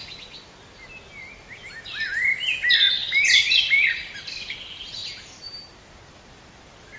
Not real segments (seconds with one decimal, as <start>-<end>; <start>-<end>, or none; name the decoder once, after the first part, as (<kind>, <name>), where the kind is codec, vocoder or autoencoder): 3.0-4.2 (vocoder, BigVGAN v2); 5.0-5.9